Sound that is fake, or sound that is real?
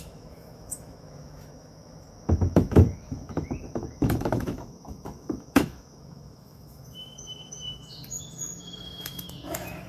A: fake